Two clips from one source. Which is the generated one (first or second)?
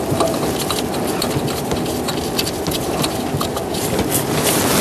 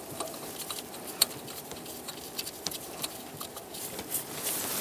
second